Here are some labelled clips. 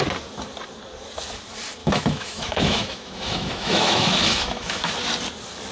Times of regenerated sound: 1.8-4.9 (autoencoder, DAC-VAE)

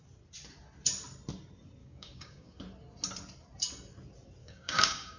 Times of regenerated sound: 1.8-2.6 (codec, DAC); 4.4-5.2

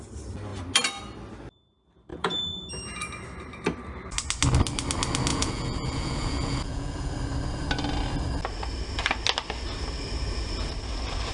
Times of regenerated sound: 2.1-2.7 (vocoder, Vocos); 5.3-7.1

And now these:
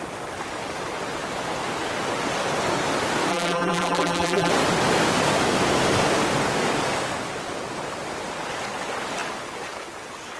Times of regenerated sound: 3.3-4.5 (vocoder, BigVGAN v2)